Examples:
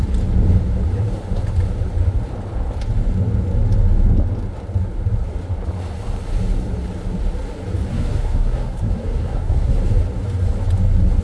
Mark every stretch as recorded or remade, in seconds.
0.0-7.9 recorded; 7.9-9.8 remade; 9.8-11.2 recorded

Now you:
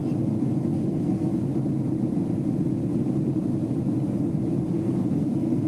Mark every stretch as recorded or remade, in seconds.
0.0-0.7 recorded; 0.7-1.3 remade; 1.3-4.7 recorded; 4.7-5.7 remade